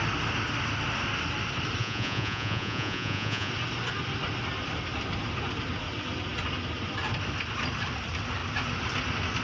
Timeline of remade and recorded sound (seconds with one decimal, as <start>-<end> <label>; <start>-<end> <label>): 0.0-1.8 recorded; 1.8-3.5 remade; 3.5-9.4 recorded